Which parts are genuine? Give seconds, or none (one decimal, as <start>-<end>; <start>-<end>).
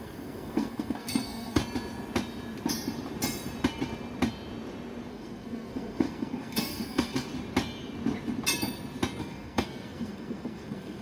1.6-5.1; 7.3-9.2